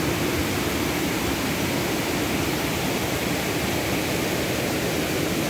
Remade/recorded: remade